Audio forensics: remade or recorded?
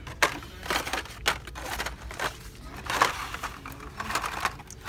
recorded